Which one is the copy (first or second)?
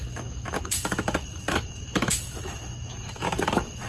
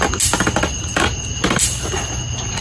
first